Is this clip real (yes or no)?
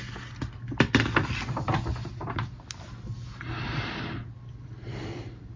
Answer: yes